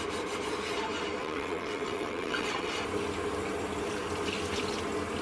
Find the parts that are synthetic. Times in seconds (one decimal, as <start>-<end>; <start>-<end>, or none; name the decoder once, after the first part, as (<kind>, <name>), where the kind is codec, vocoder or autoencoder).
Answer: 1.2-2.7 (vocoder, WaveNeXt)